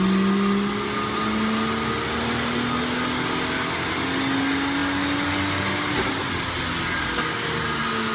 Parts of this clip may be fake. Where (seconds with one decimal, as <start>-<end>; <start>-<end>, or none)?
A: none